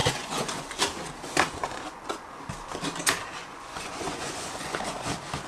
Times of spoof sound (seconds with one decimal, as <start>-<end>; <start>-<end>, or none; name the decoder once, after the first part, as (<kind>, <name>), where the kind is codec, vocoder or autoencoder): 0.0-0.8 (vocoder, Vocos); 1.6-2.4; 3.4-5.1